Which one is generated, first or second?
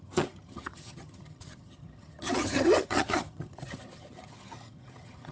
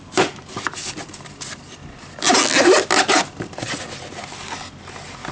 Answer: first